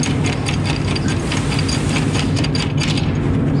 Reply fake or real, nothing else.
real